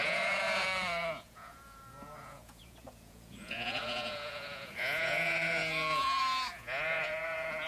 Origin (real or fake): fake